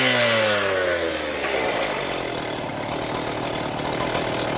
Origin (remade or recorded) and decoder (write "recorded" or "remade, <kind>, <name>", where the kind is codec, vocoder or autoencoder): recorded